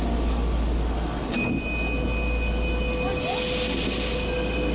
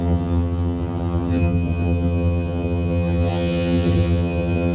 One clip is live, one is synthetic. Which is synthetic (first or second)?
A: second